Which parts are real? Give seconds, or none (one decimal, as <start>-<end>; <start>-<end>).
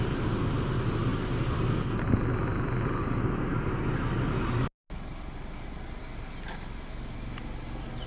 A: 0.0-8.1